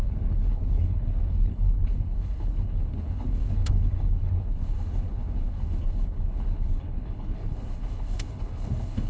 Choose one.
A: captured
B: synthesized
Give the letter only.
B